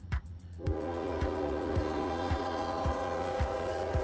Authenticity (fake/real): fake